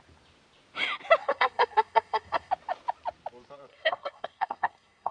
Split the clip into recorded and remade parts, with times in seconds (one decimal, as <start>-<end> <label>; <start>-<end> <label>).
0.0-1.2 recorded; 1.2-2.5 remade; 2.5-3.7 recorded; 3.7-5.1 remade